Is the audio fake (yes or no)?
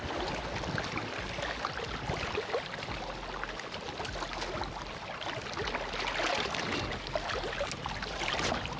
no